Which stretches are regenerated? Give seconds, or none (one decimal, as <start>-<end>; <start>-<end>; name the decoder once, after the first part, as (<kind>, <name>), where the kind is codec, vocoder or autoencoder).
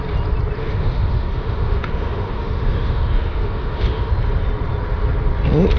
0.6-4.1 (autoencoder, DAC-VAE)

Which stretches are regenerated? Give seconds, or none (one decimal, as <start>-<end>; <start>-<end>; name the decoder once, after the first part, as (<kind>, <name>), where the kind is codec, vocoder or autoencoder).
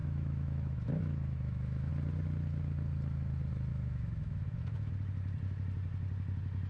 0.0-1.9 (autoencoder, DAC-VAE); 3.7-4.9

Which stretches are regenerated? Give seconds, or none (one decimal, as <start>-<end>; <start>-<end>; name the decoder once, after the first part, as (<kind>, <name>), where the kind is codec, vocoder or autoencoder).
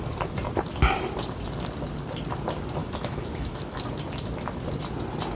2.8-3.8 (autoencoder, DAC-VAE)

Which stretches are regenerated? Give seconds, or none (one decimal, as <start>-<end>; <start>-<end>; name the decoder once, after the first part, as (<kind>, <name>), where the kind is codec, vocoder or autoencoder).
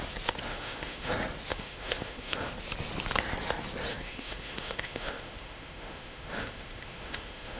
0.5-1.1 (autoencoder, DAC-VAE); 1.5-2.5; 3.9-7.6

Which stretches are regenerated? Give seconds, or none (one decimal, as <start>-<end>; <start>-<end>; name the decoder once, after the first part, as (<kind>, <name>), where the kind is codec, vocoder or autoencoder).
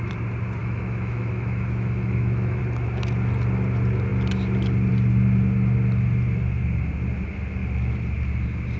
0.6-2.6 (autoencoder, DAC-VAE)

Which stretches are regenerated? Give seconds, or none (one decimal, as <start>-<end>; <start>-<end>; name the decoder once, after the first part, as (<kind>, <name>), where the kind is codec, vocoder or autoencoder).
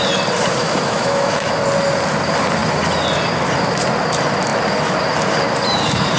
0.6-1.6 (autoencoder, DAC-VAE)